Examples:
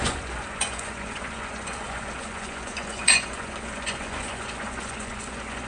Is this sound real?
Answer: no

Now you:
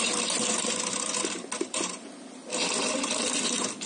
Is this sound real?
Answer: yes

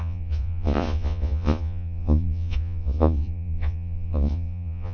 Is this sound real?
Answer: no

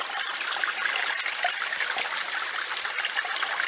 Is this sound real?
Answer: yes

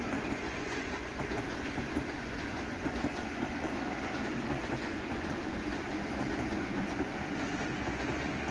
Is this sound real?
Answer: no